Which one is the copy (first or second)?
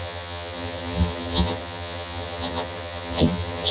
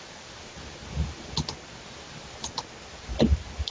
first